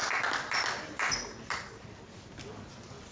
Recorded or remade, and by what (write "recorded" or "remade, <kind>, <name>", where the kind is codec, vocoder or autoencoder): recorded